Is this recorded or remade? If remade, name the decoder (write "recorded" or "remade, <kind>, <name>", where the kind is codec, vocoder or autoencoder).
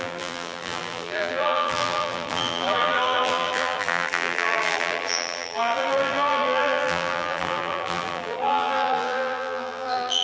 remade, vocoder, BigVGAN v2